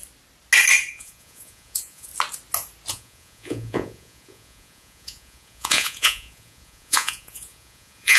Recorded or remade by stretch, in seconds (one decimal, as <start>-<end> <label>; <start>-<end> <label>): 0.0-0.9 recorded; 0.9-2.1 remade; 2.1-2.9 recorded; 2.9-8.2 remade